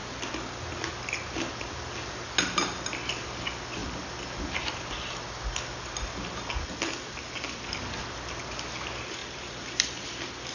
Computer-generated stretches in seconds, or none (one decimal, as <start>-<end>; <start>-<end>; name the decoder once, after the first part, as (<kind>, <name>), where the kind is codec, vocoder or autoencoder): 9.2-10.5 (vocoder, BigVGAN v2)